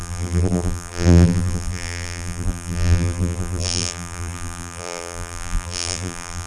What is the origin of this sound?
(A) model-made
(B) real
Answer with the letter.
A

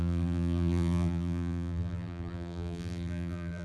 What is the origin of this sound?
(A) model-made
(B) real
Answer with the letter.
A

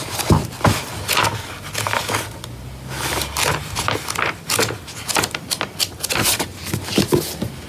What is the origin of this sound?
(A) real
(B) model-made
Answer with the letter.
A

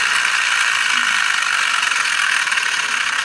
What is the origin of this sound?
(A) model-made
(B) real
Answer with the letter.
A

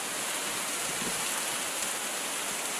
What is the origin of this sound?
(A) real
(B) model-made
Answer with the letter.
A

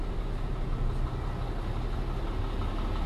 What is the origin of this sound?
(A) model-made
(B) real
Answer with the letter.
B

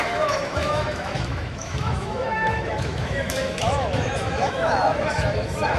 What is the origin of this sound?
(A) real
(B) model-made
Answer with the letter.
B